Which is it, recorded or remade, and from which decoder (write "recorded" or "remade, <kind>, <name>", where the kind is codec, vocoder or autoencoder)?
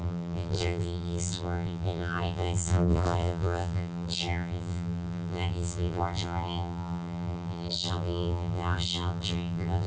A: remade, vocoder, BigVGAN v2